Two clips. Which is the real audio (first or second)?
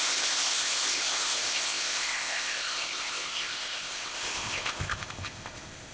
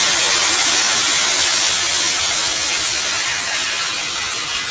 second